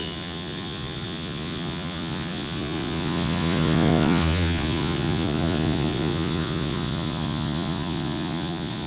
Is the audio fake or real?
fake